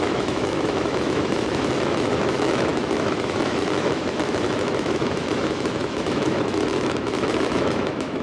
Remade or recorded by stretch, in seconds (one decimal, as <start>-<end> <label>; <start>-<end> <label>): 0.0-8.2 remade